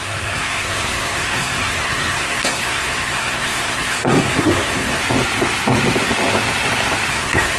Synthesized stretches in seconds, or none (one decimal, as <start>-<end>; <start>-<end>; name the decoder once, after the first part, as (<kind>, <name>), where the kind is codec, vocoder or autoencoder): 0.0-5.0 (codec, SNAC); 7.1-7.6